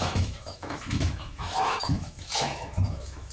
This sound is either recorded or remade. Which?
remade